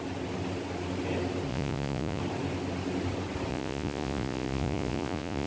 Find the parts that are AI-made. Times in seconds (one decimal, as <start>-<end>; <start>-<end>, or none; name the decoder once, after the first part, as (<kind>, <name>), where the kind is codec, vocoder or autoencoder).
1.5-2.2 (vocoder, Vocos); 3.5-5.5